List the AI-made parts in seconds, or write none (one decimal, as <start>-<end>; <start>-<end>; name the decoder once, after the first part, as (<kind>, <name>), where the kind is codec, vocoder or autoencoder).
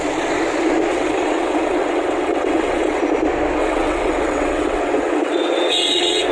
0.9-3.0 (vocoder, WaveNeXt); 3.6-6.3